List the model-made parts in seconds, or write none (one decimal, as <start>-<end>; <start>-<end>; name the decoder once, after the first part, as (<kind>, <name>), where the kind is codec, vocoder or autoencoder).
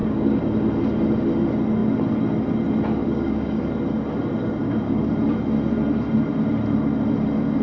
0.0-0.6 (codec, DAC); 3.0-3.6; 4.4-5.1